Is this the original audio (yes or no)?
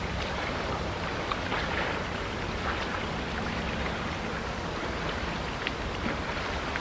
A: no